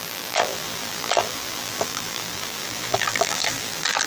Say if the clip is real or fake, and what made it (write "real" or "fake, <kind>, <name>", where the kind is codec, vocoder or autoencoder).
fake, vocoder, BigVGAN v2